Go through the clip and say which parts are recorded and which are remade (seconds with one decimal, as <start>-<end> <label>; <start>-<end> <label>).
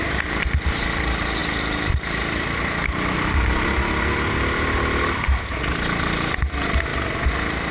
0.0-7.7 recorded